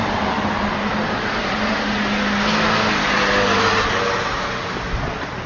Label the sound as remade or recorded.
recorded